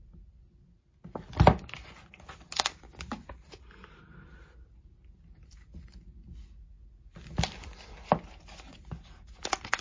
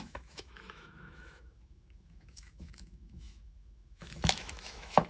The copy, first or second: second